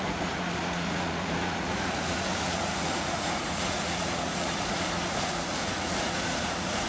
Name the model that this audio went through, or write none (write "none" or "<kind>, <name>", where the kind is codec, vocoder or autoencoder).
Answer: vocoder, Vocos